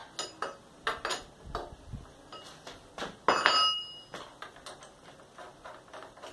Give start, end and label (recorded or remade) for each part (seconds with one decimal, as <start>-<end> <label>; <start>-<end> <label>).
0.0-6.3 recorded